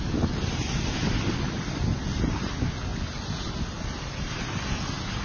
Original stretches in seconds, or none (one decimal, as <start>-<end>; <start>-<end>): 0.0-5.2